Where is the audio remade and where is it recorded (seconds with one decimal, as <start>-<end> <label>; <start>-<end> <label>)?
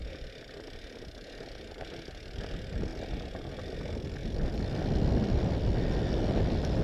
0.0-6.8 recorded